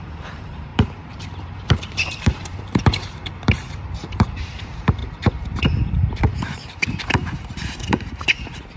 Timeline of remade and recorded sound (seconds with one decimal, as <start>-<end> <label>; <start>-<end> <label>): 0.0-5.0 remade; 5.0-6.4 recorded; 6.4-8.8 remade